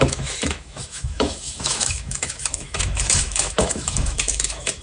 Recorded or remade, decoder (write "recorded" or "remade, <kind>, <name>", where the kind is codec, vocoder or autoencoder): remade, autoencoder, DAC-VAE